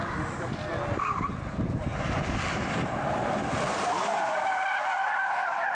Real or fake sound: real